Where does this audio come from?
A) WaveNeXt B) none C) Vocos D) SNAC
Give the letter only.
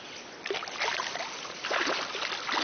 B